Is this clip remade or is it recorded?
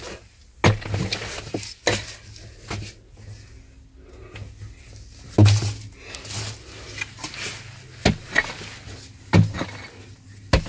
recorded